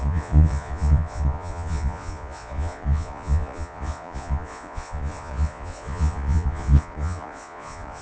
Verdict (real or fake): fake